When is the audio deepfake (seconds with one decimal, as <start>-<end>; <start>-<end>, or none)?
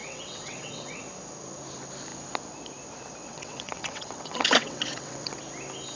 0.0-1.0; 3.2-5.4